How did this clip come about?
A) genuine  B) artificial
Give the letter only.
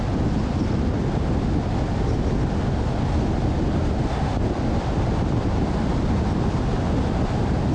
A